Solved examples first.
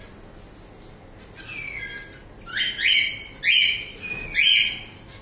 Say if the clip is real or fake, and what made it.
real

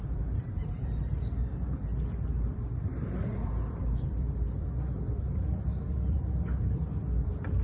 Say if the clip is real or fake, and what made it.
fake, vocoder, BigVGAN v2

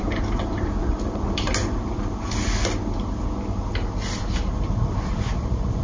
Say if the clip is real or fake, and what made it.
real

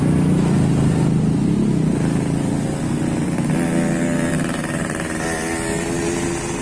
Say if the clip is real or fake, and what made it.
real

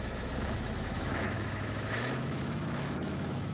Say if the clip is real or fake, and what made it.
fake, autoencoder, DAC-VAE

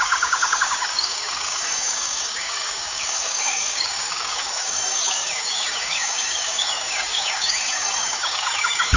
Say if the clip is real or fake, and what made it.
fake, codec, DAC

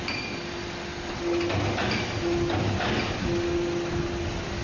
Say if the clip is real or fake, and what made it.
real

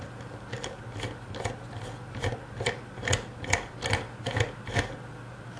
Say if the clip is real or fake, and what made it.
real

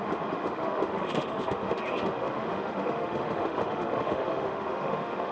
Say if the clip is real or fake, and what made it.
fake, autoencoder, DAC-VAE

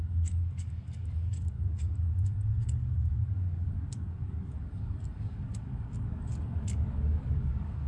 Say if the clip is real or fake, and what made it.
fake, codec, DAC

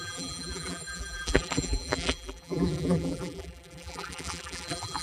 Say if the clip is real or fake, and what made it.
fake, vocoder, BigVGAN v2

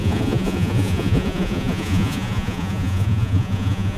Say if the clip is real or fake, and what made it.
fake, vocoder, Vocos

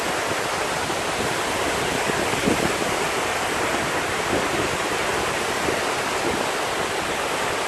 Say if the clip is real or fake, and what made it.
real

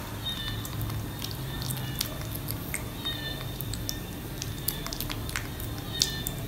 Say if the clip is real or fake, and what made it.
real